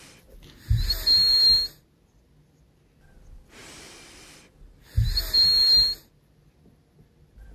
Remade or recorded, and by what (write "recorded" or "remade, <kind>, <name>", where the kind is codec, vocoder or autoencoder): recorded